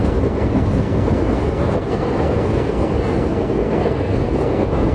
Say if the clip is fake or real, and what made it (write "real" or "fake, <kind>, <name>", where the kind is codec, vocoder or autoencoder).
fake, codec, SNAC